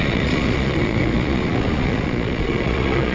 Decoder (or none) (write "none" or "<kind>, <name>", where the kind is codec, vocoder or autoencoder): vocoder, Vocos